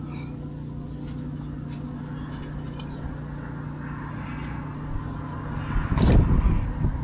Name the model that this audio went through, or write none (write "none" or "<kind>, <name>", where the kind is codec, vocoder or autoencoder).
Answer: none